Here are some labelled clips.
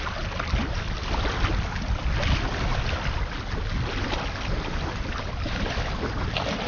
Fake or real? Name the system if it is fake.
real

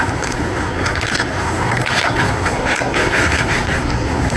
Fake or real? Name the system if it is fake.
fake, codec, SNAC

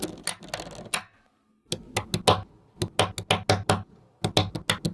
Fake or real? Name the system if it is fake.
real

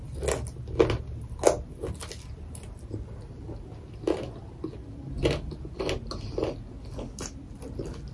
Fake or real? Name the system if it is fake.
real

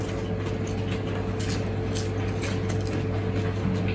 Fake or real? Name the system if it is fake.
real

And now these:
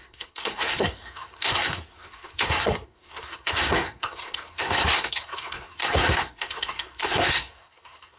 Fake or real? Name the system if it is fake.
fake, codec, SNAC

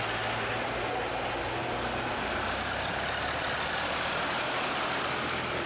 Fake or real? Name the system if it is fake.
real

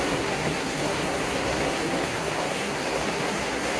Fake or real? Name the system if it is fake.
fake, codec, SNAC